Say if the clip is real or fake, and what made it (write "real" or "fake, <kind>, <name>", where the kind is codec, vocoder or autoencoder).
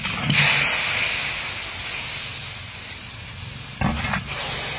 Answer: real